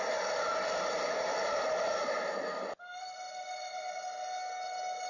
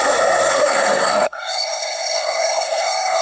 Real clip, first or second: first